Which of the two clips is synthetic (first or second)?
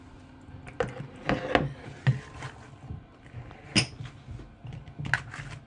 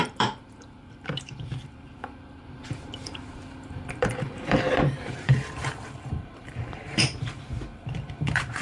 second